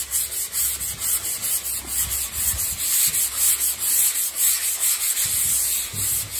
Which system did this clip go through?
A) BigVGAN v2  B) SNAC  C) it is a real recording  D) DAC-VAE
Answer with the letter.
C